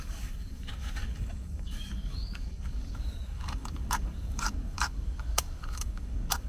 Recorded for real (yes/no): no